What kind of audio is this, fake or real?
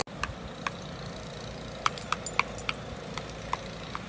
real